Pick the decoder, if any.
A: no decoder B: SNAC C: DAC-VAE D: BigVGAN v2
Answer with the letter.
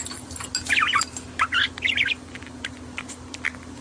A